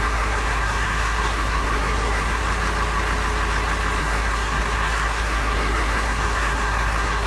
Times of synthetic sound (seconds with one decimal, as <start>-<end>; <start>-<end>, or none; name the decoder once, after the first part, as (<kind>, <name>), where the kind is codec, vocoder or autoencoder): 0.0-2.4 (codec, SNAC); 4.0-7.3

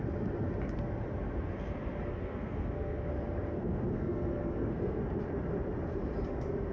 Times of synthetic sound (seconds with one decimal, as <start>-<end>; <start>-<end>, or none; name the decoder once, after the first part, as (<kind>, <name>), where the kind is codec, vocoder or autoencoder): 2.1-3.1 (codec, SNAC); 3.5-5.0